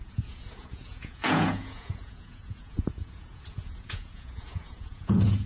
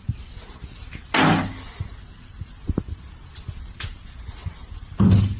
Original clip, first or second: second